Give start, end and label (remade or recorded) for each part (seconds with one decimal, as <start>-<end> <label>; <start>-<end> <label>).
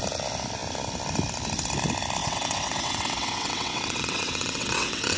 0.0-2.2 recorded; 2.2-5.2 remade